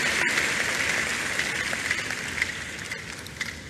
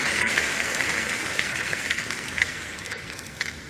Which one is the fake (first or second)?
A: second